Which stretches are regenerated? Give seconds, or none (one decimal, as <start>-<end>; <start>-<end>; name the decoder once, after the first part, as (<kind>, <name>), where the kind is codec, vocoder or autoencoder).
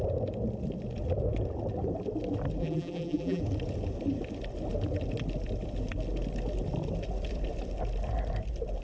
2.6-3.4 (vocoder, BigVGAN v2)